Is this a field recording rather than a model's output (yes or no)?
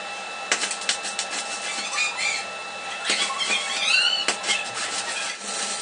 yes